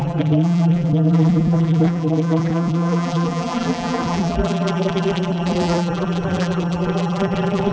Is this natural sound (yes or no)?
no